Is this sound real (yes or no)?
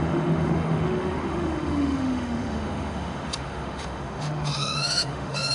no